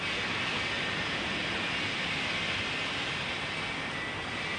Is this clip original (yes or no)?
yes